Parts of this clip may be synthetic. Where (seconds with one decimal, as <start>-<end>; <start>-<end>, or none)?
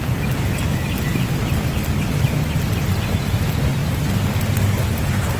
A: 1.1-3.2